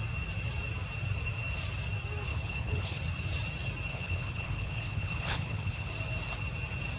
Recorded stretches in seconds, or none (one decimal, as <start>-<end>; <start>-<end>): 0.0-2.3; 3.0-3.9; 5.9-7.0